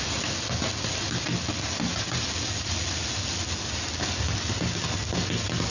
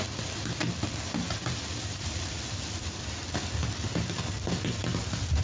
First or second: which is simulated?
second